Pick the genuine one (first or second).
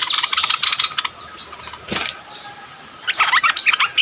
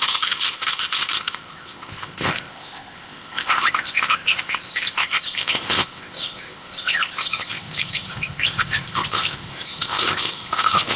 first